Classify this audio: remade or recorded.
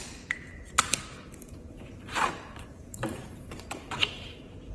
remade